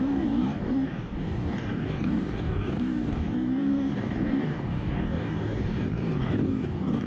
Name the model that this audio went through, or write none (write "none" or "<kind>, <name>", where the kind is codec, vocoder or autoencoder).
codec, DAC